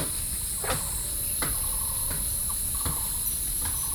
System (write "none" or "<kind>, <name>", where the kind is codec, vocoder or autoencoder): vocoder, BigVGAN v2